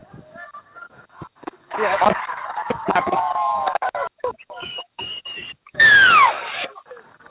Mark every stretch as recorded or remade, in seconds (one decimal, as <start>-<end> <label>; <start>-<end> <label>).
0.0-7.3 remade